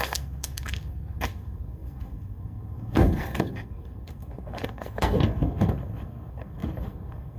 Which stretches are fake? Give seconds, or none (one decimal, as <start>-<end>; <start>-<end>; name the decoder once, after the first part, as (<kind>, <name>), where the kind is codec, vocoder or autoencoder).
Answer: 0.0-7.4 (codec, SNAC)